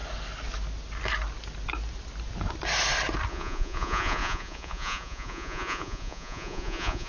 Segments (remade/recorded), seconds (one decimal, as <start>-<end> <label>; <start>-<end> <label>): 0.0-3.3 recorded; 3.3-7.1 remade